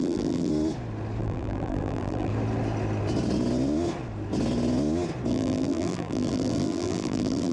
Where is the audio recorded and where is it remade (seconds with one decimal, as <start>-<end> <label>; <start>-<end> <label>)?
0.0-0.5 remade; 0.5-1.2 recorded; 1.2-2.3 remade; 2.3-5.3 recorded; 5.3-7.5 remade

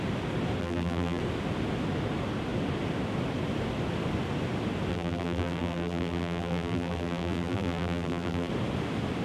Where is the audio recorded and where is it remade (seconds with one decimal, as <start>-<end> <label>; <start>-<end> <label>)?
0.0-0.6 recorded; 0.6-1.2 remade; 1.2-4.9 recorded; 4.9-8.5 remade; 8.5-9.2 recorded

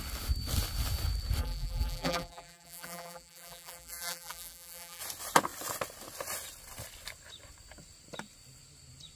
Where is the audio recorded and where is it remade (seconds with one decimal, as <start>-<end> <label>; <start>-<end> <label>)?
0.0-1.4 recorded; 1.4-5.0 remade; 5.0-9.2 recorded

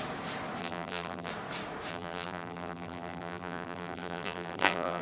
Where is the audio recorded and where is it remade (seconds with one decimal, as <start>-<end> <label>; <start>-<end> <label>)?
0.0-0.6 recorded; 0.6-1.3 remade; 1.3-1.9 recorded; 1.9-5.0 remade

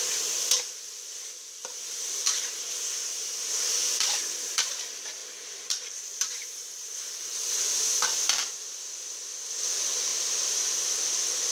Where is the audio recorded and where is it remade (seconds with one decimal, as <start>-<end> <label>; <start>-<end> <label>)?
0.0-1.6 recorded; 1.6-3.5 remade; 3.5-5.2 recorded; 5.2-8.8 remade; 8.8-10.1 recorded; 10.1-10.7 remade; 10.7-11.5 recorded

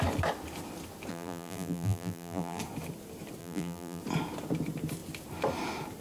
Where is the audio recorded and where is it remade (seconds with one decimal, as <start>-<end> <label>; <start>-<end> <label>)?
0.0-1.1 recorded; 1.1-2.6 remade; 2.6-3.4 recorded; 3.4-4.0 remade; 4.0-6.0 recorded

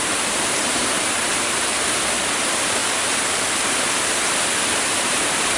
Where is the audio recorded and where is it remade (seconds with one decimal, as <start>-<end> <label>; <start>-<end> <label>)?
0.0-2.8 remade; 2.8-5.0 recorded; 5.0-5.6 remade

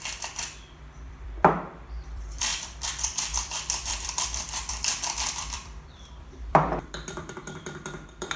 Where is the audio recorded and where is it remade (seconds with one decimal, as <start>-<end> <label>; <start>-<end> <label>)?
0.0-8.4 remade